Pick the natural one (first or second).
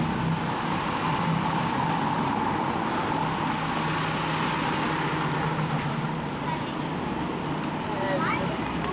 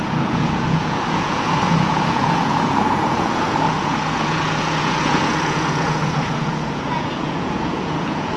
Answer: first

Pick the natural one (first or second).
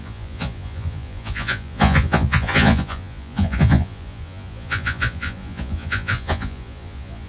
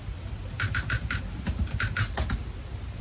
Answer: second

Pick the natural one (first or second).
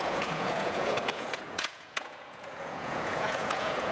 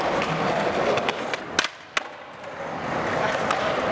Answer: second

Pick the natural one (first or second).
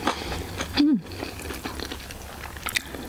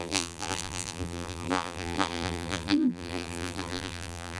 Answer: first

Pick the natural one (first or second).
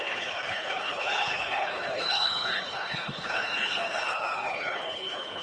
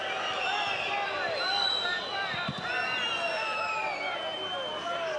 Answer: second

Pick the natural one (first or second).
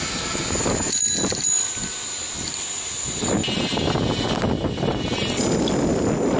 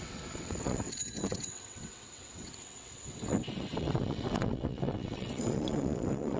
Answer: first